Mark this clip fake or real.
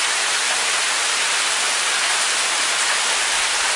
real